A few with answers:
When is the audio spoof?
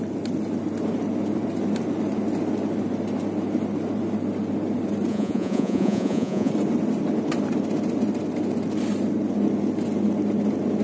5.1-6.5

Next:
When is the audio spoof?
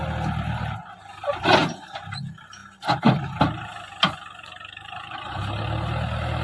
none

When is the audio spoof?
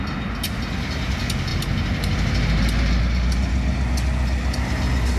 none